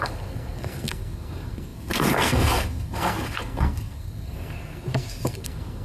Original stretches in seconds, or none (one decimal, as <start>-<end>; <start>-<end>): none